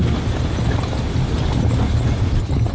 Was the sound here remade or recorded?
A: recorded